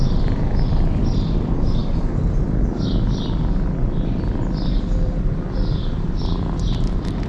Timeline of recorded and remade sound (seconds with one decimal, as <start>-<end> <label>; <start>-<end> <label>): 0.0-7.3 recorded